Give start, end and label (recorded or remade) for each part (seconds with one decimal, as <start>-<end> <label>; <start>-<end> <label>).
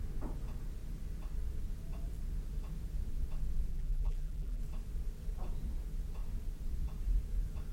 0.0-3.7 recorded; 3.7-4.6 remade; 4.6-7.7 recorded